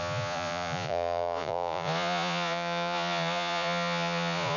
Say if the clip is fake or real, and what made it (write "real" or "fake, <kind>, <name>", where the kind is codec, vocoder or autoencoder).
fake, vocoder, Vocos